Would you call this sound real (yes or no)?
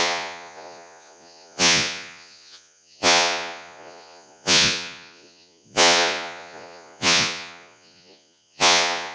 no